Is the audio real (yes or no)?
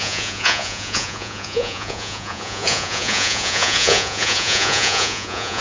no